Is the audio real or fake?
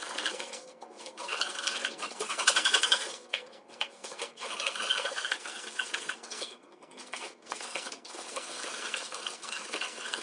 fake